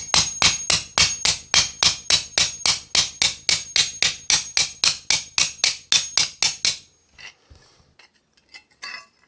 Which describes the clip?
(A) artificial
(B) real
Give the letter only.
B